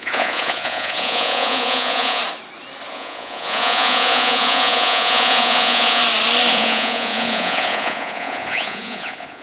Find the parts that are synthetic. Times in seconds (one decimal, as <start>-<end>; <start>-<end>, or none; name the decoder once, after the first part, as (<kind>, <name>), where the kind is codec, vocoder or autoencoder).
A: 0.0-2.2 (vocoder, Vocos); 2.9-6.0; 6.5-9.4